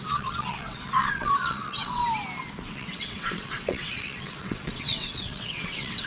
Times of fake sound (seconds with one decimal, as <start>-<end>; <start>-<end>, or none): 0.0-2.0; 2.6-6.1